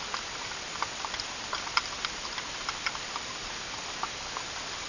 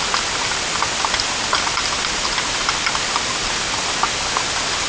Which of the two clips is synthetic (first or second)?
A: first